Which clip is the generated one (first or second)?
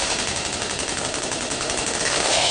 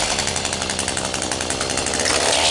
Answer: first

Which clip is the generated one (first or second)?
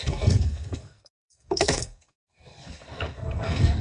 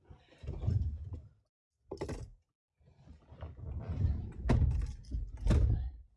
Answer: first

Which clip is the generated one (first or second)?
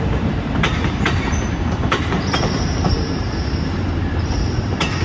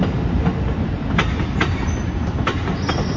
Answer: first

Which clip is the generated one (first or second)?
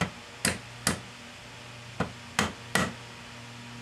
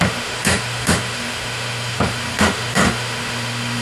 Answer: second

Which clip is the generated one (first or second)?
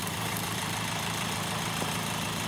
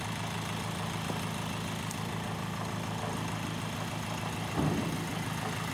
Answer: first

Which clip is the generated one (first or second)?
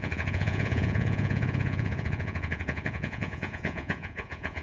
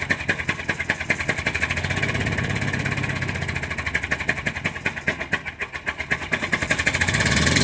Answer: first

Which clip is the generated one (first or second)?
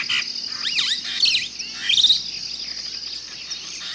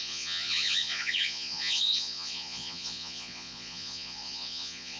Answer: second